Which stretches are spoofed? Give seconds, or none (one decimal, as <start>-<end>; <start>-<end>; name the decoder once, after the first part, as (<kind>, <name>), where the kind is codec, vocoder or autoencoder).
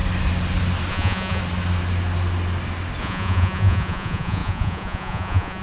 0.9-1.4 (vocoder, Vocos); 3.0-5.6